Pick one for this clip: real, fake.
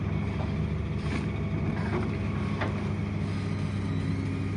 real